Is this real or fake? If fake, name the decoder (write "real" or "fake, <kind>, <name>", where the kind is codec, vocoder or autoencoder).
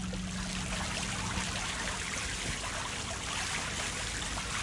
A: real